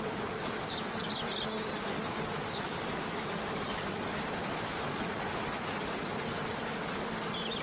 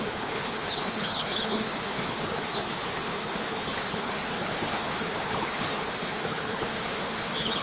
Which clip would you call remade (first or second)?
second